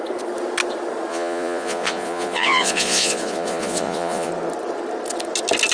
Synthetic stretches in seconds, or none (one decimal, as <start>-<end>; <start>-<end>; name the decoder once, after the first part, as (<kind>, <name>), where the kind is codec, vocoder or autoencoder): 1.1-4.3 (vocoder, Vocos)